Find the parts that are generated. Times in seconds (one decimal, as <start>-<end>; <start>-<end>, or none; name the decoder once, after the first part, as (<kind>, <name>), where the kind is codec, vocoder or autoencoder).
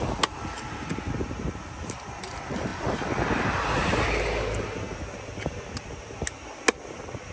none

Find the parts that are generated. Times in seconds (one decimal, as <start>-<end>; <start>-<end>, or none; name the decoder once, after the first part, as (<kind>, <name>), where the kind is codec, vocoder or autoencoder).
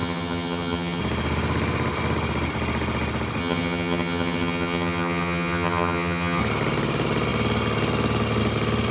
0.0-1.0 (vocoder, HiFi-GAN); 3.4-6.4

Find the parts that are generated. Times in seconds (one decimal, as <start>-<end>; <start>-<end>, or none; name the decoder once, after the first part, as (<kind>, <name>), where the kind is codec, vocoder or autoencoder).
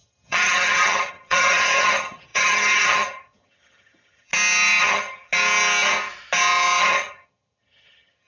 0.0-4.3 (vocoder, HiFi-GAN); 4.8-5.3; 6.8-8.3